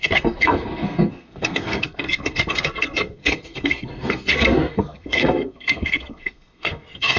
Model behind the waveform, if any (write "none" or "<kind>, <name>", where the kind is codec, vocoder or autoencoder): codec, SNAC